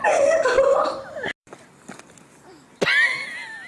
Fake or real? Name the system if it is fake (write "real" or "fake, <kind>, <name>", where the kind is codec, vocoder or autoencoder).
real